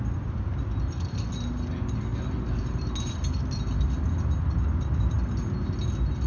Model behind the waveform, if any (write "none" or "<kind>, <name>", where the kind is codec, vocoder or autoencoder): none